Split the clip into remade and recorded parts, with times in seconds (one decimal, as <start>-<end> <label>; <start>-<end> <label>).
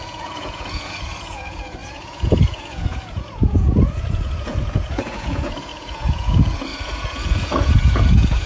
0.0-8.5 remade